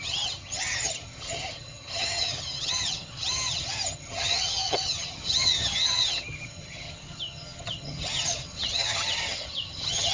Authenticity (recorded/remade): remade